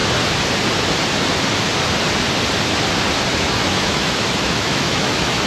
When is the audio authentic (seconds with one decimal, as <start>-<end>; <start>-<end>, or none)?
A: 0.0-3.3